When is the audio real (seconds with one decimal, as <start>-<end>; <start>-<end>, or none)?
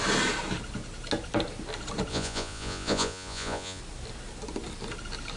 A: 0.0-2.1; 3.8-5.4